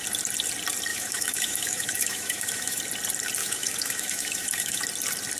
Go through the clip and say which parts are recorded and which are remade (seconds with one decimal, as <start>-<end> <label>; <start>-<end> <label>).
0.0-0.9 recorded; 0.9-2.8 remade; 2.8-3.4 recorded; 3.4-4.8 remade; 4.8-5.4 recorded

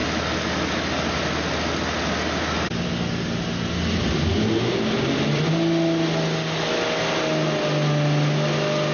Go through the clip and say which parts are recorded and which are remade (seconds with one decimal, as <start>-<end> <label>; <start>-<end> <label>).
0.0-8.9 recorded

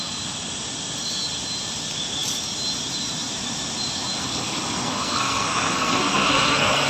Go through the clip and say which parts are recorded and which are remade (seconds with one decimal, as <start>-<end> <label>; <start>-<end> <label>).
0.0-4.2 recorded; 4.2-6.9 remade

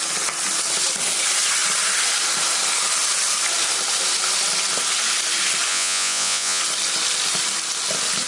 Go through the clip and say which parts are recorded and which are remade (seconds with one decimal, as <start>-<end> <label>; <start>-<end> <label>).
0.0-5.7 recorded; 5.7-6.6 remade; 6.6-8.3 recorded

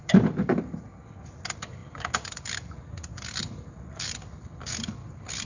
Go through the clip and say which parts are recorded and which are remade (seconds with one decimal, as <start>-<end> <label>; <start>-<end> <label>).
0.0-5.5 recorded